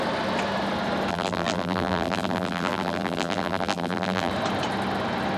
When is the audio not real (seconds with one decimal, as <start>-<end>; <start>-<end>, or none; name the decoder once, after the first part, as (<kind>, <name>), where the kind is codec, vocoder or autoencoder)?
1.1-4.3 (vocoder, BigVGAN v2)